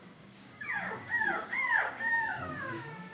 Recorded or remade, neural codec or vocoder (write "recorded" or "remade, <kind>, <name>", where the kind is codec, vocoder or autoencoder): remade, codec, DAC